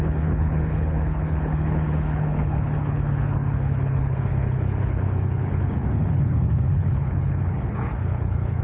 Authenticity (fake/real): fake